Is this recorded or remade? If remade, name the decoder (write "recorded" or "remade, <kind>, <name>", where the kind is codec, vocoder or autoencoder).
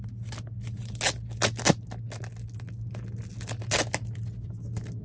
recorded